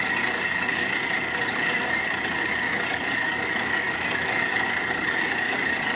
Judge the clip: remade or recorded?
remade